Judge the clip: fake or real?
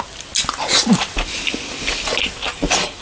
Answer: real